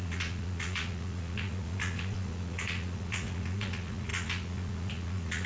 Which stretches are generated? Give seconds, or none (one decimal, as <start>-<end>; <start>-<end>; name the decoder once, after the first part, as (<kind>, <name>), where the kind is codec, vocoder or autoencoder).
0.0-5.5 (vocoder, Vocos)